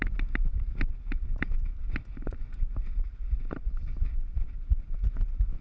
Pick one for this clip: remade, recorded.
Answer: recorded